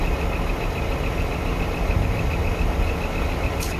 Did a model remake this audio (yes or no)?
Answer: no